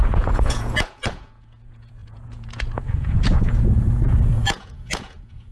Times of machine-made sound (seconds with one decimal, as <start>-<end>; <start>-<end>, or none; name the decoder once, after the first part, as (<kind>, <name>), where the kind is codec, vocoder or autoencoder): 0.0-5.5 (vocoder, Vocos)